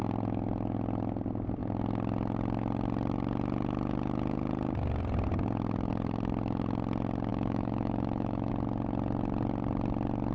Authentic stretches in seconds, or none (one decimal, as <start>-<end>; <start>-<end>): 0.0-7.3; 8.5-10.3